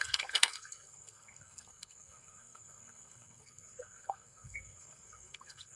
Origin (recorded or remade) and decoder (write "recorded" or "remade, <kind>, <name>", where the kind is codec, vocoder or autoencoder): remade, codec, SNAC